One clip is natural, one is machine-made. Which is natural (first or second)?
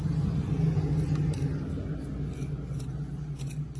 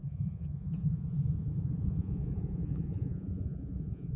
first